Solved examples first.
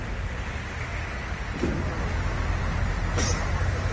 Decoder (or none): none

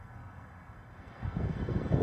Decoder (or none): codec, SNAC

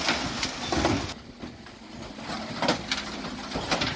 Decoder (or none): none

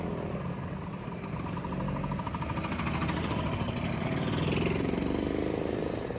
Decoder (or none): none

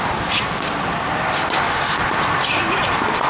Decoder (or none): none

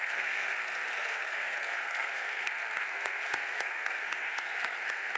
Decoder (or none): codec, SNAC